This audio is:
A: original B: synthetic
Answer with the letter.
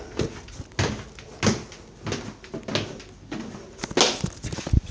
A